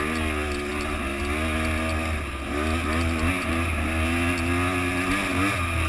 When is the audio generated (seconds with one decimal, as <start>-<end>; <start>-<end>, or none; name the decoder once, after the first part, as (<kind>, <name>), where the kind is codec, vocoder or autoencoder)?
none